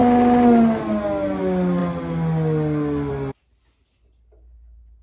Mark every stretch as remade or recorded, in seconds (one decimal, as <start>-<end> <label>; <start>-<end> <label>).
0.0-5.0 recorded